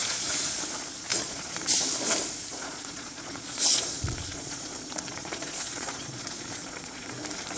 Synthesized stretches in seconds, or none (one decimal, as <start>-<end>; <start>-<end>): 0.0-0.6; 1.1-1.7; 2.5-7.1